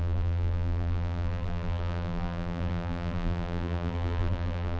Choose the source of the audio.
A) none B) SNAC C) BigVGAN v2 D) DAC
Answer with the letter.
C